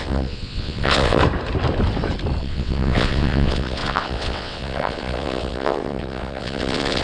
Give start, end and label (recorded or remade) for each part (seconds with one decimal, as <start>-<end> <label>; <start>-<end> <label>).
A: 0.0-1.2 remade; 1.2-2.4 recorded; 2.4-7.0 remade